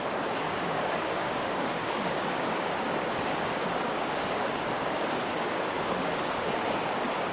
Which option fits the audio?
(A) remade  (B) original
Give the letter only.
A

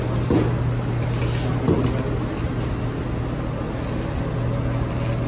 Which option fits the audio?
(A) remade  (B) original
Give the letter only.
B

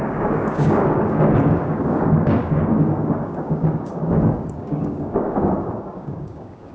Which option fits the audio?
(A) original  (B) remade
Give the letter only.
B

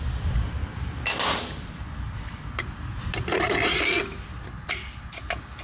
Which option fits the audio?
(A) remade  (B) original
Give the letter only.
B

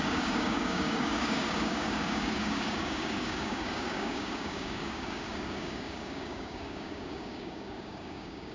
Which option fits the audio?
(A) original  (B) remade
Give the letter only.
B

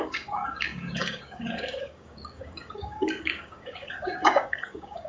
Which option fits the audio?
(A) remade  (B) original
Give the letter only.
A